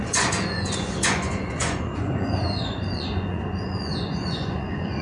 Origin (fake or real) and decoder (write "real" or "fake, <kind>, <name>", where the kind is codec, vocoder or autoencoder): fake, vocoder, Vocos